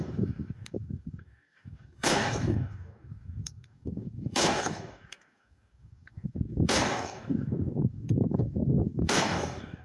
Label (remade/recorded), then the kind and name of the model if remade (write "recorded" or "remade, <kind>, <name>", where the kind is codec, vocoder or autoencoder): remade, codec, DAC